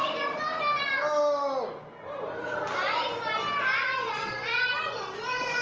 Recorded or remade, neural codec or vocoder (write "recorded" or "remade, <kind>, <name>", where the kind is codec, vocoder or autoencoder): recorded